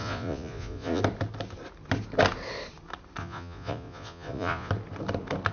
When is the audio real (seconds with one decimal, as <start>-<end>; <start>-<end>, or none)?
1.0-3.2; 4.7-5.5